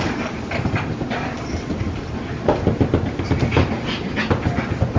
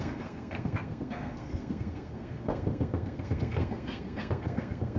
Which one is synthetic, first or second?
second